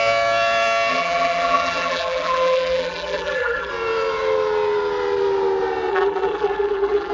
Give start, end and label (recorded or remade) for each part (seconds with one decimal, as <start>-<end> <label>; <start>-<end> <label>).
0.0-0.9 recorded; 0.9-3.7 remade; 3.7-5.9 recorded; 5.9-7.1 remade